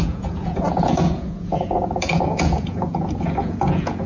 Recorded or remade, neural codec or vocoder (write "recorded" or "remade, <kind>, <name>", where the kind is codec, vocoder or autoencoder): remade, vocoder, Vocos